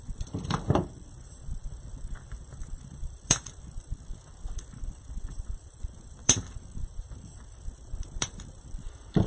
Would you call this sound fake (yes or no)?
yes